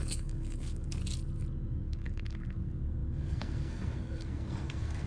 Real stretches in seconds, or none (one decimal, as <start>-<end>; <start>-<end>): 1.0-1.7